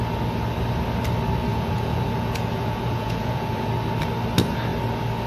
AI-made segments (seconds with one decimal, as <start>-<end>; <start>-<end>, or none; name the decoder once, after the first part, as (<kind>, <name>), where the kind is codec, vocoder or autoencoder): 1.5-3.7 (vocoder, Vocos)